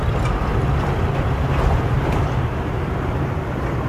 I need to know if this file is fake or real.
real